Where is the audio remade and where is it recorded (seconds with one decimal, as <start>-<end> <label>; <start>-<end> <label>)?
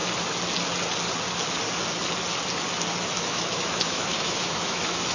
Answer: 0.0-3.1 recorded; 3.1-5.1 remade